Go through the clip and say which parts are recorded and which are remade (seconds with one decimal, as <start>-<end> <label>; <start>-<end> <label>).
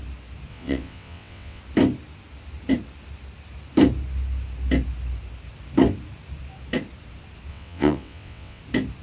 0.0-0.5 recorded; 0.5-1.6 remade; 1.6-7.5 recorded; 7.5-8.6 remade; 8.6-9.0 recorded